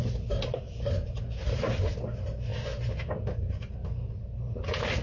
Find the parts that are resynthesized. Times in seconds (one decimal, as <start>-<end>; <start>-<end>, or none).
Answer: 0.5-1.2